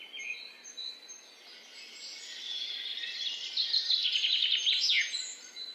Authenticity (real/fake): real